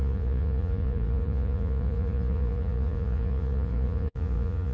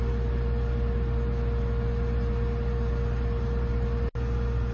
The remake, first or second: first